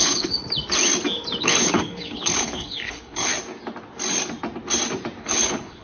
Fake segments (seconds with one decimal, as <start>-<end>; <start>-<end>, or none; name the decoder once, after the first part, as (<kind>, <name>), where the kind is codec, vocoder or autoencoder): 0.0-0.4 (codec, HILCodec); 1.4-3.3; 5.2-5.8